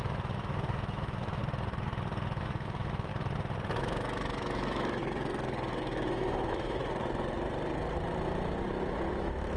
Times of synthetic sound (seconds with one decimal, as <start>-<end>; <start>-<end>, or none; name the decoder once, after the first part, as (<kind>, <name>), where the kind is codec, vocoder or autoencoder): 0.0-1.4 (autoencoder, DAC-VAE); 2.4-3.1; 3.8-5.0; 5.8-6.8; 9.1-9.6

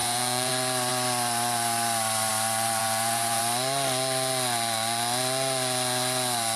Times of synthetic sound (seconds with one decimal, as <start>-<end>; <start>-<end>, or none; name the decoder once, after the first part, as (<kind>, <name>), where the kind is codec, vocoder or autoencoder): 0.0-0.5 (vocoder, Vocos); 2.8-3.4

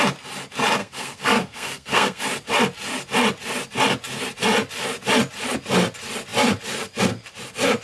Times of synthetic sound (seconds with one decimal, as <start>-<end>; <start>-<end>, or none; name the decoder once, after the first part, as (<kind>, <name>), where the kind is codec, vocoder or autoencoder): 0.8-2.2 (codec, SNAC)

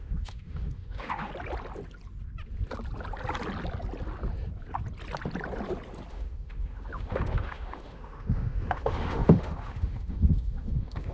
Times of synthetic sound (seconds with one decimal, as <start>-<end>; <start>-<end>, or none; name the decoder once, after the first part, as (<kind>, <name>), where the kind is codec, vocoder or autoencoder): 0.0-1.3 (autoencoder, DAC-VAE); 6.1-11.1

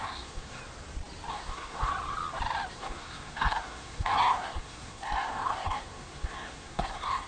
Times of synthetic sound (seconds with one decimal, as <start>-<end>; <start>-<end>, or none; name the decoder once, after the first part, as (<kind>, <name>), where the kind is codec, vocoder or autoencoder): 0.0-0.6 (codec, SNAC); 1.3-1.9; 2.7-7.3

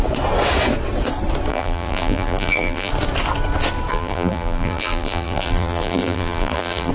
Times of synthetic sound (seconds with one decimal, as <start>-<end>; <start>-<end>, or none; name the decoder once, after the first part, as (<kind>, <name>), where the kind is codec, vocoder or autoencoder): 1.5-2.9 (vocoder, BigVGAN v2); 3.9-6.9

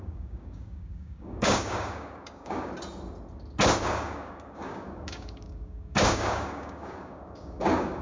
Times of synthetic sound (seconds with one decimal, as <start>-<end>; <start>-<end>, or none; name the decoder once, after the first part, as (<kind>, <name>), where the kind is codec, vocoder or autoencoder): 0.0-2.7 (codec, DAC); 3.8-8.0